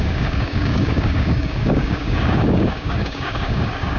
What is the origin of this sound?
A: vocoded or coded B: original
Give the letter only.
A